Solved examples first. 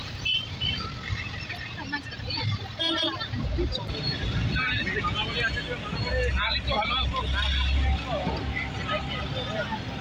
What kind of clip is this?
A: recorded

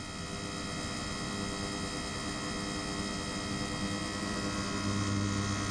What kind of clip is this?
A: recorded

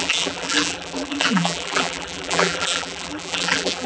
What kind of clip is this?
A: remade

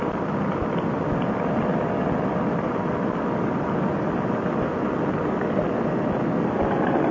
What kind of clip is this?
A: recorded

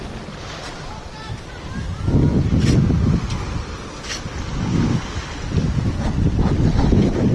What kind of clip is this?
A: recorded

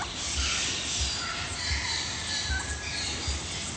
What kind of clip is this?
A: recorded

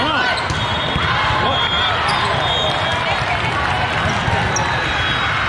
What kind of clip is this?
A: recorded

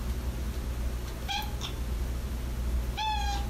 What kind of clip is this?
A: recorded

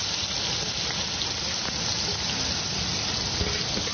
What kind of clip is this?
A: recorded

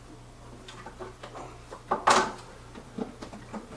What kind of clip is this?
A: recorded